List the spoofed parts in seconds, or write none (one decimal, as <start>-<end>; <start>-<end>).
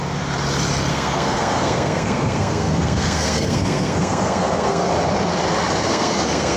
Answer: 0.9-4.9; 5.9-6.6